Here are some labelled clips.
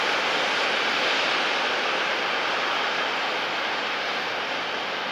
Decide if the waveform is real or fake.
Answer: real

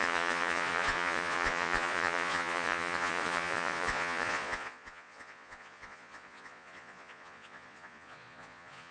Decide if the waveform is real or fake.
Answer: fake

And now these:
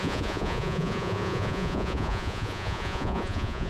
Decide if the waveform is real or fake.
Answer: fake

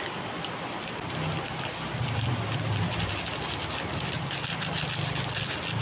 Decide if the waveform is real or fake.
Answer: real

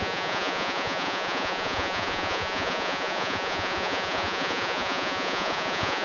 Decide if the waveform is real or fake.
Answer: fake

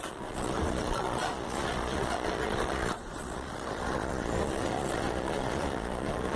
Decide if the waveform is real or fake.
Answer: fake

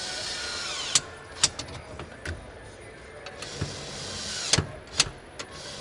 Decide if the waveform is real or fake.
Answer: real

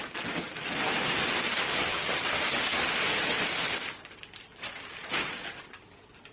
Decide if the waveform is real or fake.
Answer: real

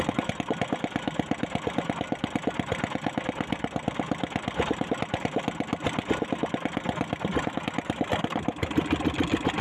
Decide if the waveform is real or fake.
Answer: real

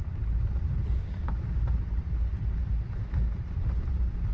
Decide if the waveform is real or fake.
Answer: real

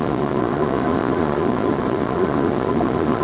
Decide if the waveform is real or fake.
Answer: fake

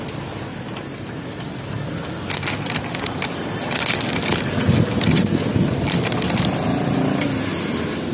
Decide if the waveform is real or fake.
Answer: real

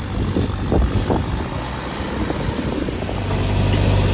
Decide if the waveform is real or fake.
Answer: real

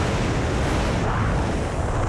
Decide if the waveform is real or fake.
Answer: real